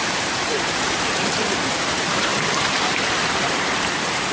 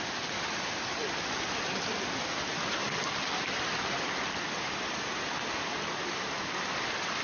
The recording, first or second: second